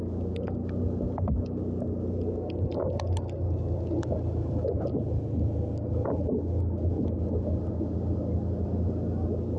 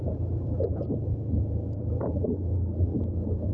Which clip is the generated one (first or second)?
second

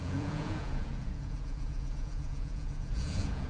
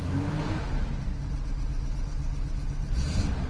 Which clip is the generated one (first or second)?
first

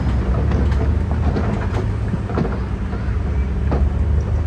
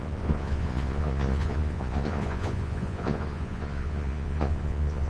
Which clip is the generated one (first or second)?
second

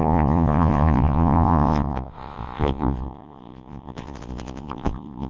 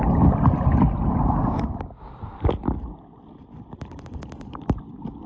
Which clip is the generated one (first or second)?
first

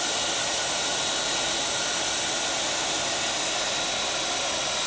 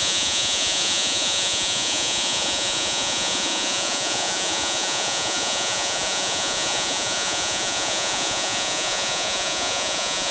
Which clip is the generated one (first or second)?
second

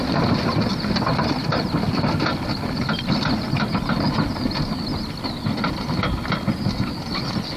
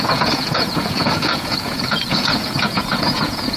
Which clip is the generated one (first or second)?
second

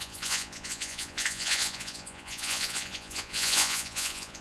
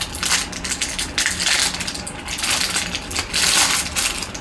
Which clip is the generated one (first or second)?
first